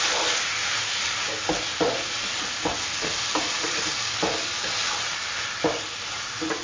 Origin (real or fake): real